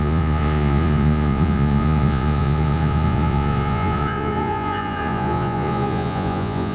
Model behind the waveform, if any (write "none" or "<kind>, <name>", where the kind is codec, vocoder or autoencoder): vocoder, Vocos